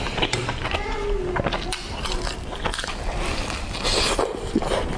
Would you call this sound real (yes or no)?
yes